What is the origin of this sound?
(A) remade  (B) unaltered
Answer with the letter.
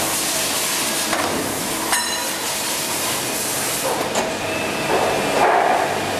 B